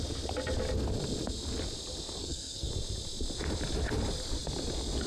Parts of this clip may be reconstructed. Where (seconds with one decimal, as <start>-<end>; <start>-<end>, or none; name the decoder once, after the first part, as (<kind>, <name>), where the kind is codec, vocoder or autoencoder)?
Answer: 2.2-2.7 (codec, SNAC)